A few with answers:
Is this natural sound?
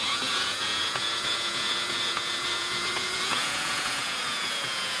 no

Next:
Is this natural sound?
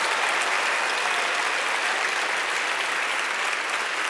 yes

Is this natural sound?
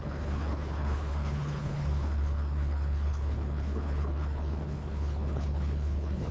no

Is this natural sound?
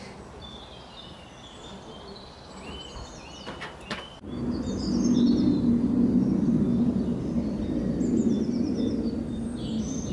yes